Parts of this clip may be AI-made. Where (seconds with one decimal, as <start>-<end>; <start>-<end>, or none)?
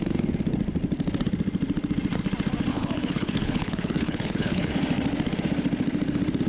2.7-4.7